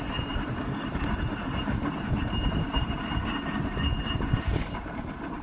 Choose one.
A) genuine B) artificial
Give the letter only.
B